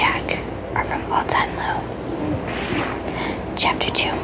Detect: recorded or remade recorded